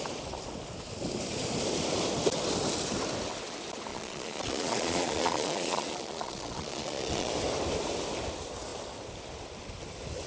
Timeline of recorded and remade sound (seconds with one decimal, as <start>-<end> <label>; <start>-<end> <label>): 0.0-3.9 recorded; 3.9-7.3 remade; 7.3-10.3 recorded